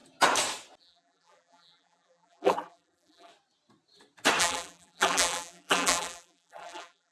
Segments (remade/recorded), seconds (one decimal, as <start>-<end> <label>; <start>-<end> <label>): 0.0-0.8 recorded; 0.8-3.3 remade; 3.3-4.4 recorded; 4.4-7.1 remade